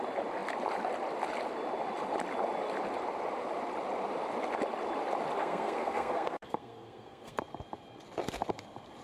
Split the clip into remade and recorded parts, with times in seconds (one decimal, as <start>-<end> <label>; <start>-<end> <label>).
0.0-5.4 recorded; 5.4-7.4 remade; 7.4-9.0 recorded